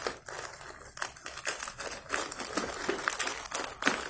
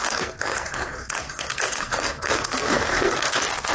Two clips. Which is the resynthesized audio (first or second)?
second